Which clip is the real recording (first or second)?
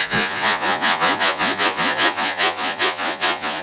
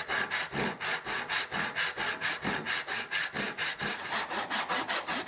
second